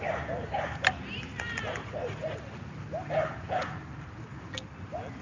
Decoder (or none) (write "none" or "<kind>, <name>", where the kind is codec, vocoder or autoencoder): none